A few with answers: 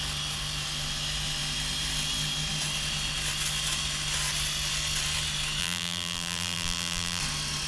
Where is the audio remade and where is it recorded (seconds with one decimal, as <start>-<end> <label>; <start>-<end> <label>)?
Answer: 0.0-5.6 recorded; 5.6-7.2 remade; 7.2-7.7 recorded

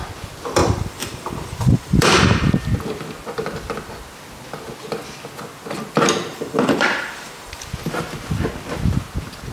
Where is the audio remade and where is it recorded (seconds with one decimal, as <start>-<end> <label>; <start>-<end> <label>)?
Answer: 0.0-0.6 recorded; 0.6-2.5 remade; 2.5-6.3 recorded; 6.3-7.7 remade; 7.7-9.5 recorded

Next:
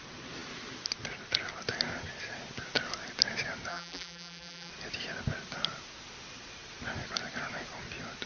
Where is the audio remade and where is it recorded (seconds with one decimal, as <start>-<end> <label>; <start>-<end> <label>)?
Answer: 0.0-3.7 recorded; 3.7-4.7 remade; 4.7-8.3 recorded

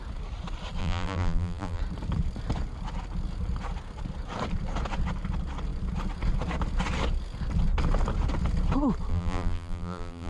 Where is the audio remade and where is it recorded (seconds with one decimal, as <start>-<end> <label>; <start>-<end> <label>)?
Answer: 0.0-0.8 recorded; 0.8-1.8 remade; 1.8-9.1 recorded; 9.1-10.3 remade

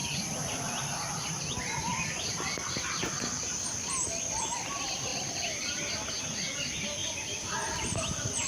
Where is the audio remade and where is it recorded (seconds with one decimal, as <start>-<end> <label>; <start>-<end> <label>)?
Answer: 0.0-1.4 remade; 1.4-1.9 recorded; 1.9-2.5 remade; 2.5-5.1 recorded; 5.1-5.9 remade; 5.9-7.0 recorded; 7.0-8.5 remade

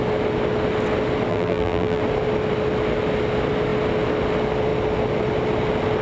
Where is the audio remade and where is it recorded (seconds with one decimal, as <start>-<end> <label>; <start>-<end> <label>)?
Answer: 0.0-1.3 recorded; 1.3-2.0 remade; 2.0-6.0 recorded